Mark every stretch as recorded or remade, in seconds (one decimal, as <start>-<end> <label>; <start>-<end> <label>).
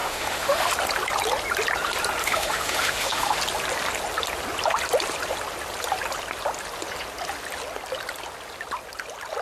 0.0-0.7 remade; 0.7-2.2 recorded; 2.2-3.4 remade; 3.4-9.4 recorded